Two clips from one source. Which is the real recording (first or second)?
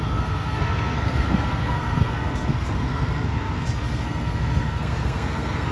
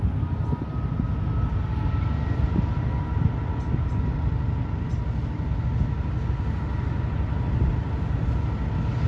second